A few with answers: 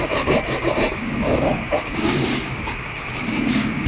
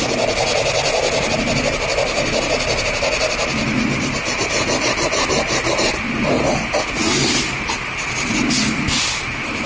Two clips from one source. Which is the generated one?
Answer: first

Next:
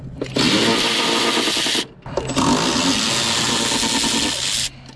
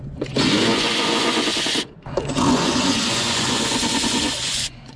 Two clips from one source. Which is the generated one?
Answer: second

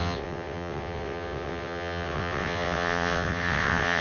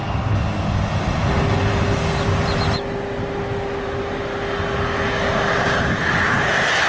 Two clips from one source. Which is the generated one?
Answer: first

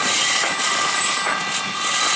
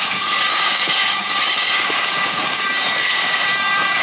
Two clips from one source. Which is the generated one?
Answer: second